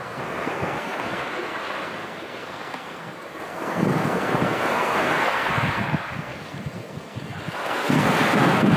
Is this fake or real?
fake